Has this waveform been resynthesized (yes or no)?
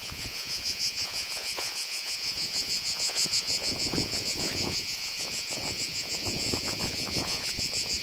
yes